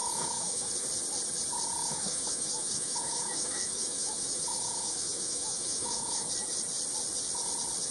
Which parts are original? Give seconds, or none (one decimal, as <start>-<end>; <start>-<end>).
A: 0.7-1.8; 6.3-7.9